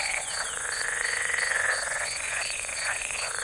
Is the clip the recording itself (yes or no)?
no